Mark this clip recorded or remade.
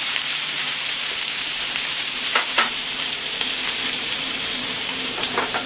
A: remade